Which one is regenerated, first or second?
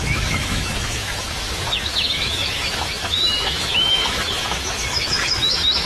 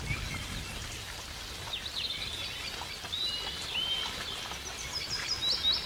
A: first